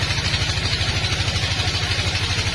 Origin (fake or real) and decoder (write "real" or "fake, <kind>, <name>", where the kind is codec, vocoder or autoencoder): real